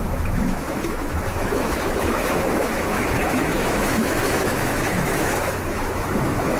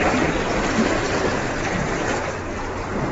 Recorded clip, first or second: second